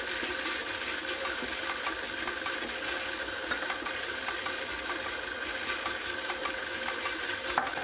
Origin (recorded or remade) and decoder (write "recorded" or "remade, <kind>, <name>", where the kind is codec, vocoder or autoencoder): recorded